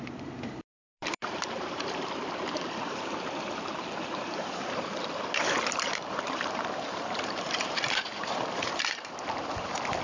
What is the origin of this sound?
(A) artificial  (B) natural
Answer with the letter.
A